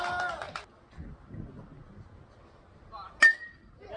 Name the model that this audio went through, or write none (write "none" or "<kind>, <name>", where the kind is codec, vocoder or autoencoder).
none